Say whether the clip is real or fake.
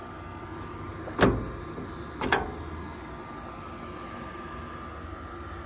real